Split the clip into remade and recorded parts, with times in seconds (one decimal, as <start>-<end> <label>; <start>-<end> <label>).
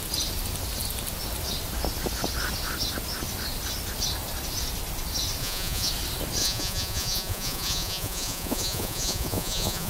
0.0-5.4 recorded; 5.4-5.9 remade; 5.9-6.4 recorded; 6.4-9.9 remade